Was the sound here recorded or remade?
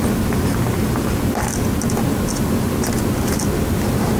recorded